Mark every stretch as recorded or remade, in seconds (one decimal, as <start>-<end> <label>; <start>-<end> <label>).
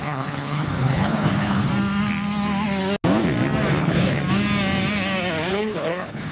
0.0-1.7 remade; 1.7-3.8 recorded; 3.8-4.2 remade; 4.2-5.5 recorded; 5.5-6.3 remade